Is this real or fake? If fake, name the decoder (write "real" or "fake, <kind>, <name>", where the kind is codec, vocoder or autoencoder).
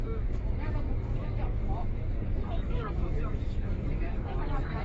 fake, codec, DAC